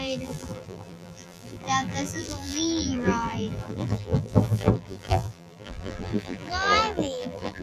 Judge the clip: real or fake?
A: fake